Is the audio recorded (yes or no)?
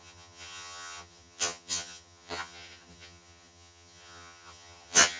no